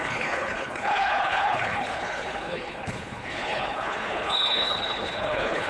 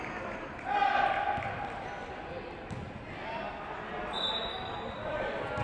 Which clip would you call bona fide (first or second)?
second